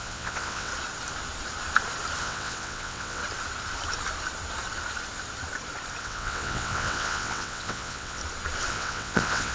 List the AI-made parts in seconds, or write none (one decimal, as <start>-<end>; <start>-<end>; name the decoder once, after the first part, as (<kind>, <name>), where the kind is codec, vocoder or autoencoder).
0.0-0.7 (vocoder, WaveNeXt); 2.2-3.2; 6.0-8.2; 8.7-9.5